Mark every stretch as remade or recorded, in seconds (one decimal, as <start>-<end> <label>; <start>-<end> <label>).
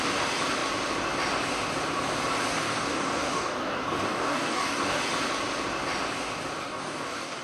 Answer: 0.0-2.5 recorded; 2.5-5.0 remade; 5.0-6.6 recorded; 6.6-7.4 remade